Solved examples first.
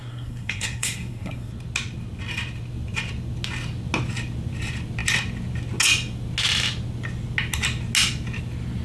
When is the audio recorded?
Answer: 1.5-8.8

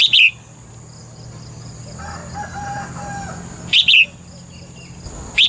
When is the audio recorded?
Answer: 0.0-5.5

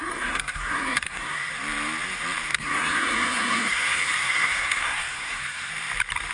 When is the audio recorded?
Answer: 1.5-2.5; 5.7-6.3